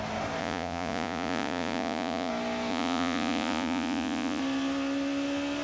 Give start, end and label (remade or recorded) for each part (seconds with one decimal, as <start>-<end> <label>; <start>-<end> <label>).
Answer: 0.0-0.4 recorded; 0.4-2.3 remade; 2.3-2.7 recorded; 2.7-4.4 remade; 4.4-5.6 recorded